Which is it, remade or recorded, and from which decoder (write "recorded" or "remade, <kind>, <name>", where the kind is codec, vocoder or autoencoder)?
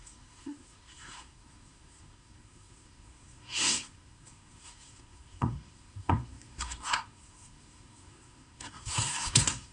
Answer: remade, codec, SNAC